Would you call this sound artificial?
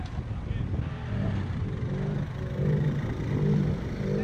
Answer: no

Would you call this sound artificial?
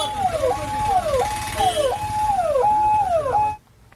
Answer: no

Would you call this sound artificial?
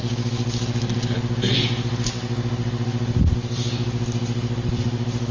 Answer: no